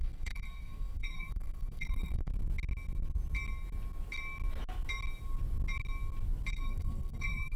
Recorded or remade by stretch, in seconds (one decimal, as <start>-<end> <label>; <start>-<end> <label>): 0.0-2.3 remade; 2.3-6.5 recorded; 6.5-7.6 remade